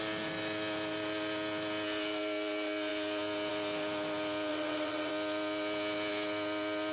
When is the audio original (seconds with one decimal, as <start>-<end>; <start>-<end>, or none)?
0.0-4.5; 5.1-6.9